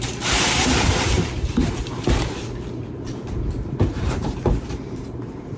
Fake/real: fake